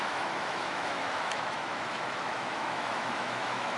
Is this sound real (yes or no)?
no